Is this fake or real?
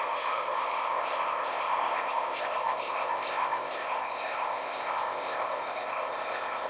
fake